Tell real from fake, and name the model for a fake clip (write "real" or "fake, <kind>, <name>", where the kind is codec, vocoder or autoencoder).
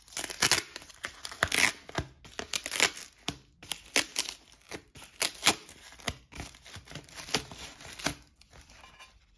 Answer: real